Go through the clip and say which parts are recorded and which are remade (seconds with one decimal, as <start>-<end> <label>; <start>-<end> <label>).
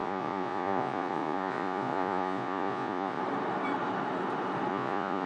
0.0-3.2 remade; 3.2-4.7 recorded; 4.7-5.3 remade